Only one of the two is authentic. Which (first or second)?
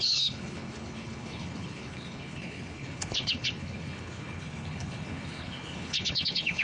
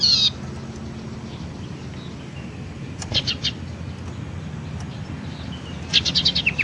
second